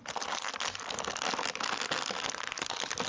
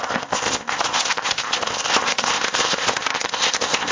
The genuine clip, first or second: first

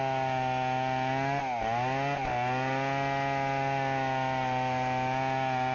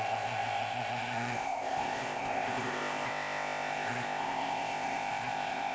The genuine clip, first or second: first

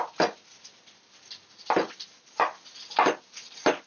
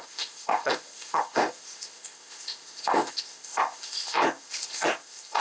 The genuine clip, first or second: first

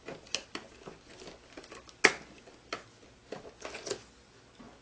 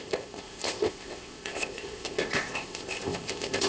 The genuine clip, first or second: first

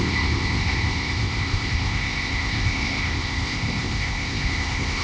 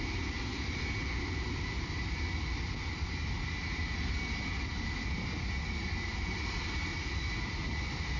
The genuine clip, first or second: second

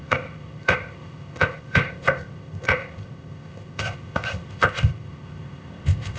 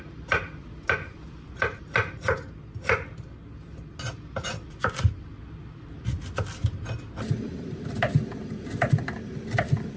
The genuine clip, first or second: second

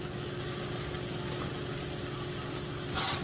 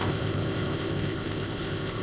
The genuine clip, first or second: first